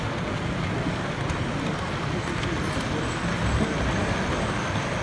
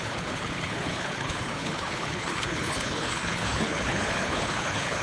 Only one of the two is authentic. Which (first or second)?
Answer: first